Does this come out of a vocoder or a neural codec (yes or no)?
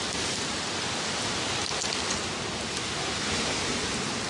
no